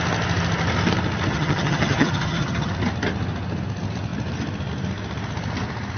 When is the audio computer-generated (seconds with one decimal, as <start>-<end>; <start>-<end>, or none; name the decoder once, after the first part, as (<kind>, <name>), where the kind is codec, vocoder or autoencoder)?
1.3-2.7 (vocoder, HiFi-GAN)